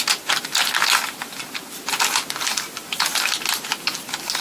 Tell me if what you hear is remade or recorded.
recorded